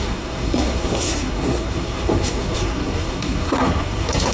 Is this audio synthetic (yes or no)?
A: yes